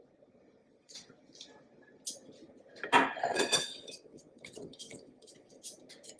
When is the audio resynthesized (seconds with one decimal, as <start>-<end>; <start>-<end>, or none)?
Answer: 0.6-1.1; 3.3-5.6